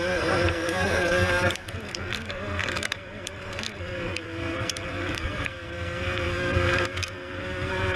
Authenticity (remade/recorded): remade